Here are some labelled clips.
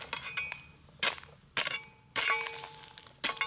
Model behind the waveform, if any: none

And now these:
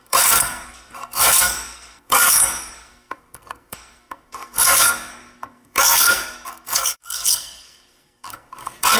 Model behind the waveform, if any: codec, SNAC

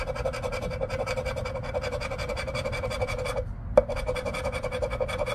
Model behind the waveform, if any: none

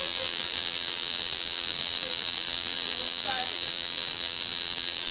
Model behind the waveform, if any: vocoder, BigVGAN v2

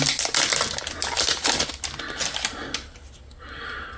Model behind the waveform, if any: none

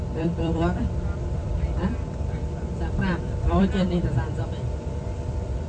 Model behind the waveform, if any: vocoder, BigVGAN v2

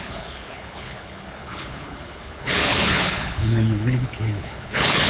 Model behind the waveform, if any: codec, HILCodec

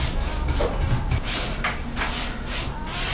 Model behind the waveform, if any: none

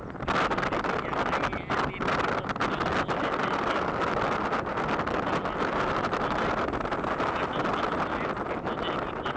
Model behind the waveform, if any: none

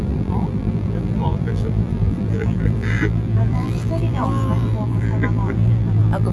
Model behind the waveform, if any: vocoder, BigVGAN v2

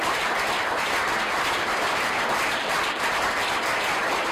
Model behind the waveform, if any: none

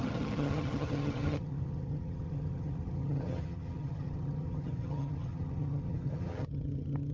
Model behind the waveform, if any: vocoder, HiFi-GAN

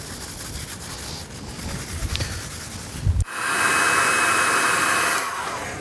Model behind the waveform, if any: none